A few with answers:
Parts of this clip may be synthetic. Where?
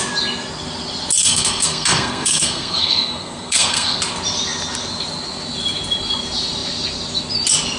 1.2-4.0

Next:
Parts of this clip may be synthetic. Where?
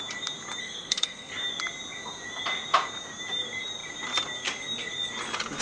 0.6-1.3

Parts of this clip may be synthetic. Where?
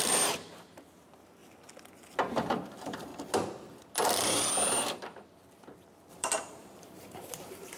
0.0-1.4; 2.5-3.1; 6.1-7.8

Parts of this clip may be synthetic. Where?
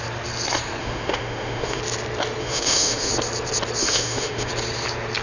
0.8-1.8; 2.4-3.1; 3.8-4.5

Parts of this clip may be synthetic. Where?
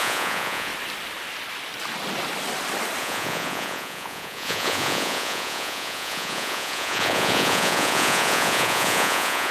0.0-0.7; 3.0-9.5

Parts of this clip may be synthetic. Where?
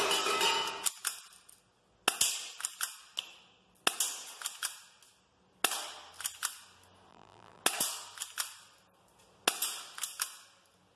7.1-7.6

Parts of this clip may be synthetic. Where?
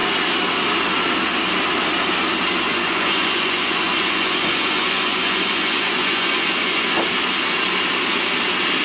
2.7-6.9